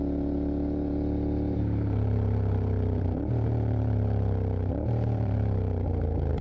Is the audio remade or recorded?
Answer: remade